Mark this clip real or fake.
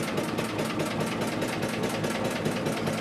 real